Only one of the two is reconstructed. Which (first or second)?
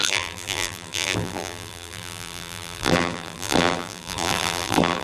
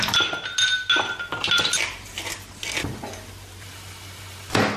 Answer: first